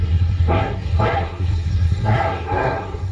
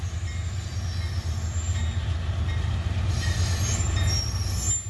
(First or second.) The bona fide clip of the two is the second